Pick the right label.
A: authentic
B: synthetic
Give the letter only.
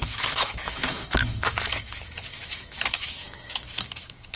B